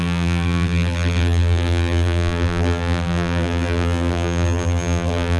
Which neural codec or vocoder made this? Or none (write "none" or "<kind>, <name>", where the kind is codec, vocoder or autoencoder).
vocoder, BigVGAN v2